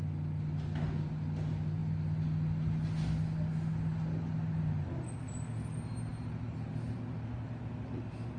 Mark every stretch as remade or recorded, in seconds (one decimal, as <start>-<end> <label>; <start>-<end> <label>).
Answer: 0.0-8.4 recorded

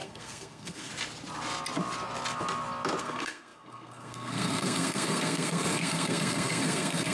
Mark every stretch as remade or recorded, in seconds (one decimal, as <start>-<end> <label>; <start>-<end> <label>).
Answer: 0.0-0.9 remade; 0.9-3.0 recorded; 3.0-7.1 remade

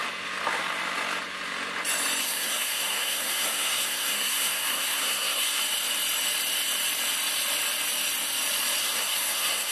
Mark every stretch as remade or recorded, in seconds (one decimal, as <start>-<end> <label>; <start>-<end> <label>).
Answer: 0.0-2.2 recorded; 2.2-5.6 remade; 5.6-8.8 recorded; 8.8-9.7 remade

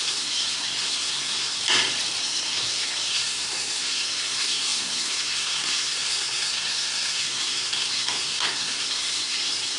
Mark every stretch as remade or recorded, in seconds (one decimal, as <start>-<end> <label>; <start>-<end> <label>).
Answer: 0.0-1.6 remade; 1.6-2.2 recorded; 2.2-9.8 remade